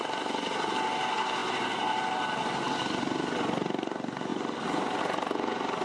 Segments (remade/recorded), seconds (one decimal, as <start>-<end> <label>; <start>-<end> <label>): 0.0-5.8 recorded